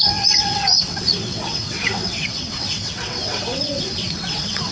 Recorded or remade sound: remade